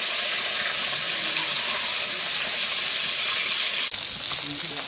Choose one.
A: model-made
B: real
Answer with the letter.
B